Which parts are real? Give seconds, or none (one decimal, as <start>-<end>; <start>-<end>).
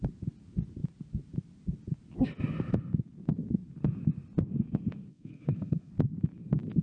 0.0-5.1; 5.9-6.8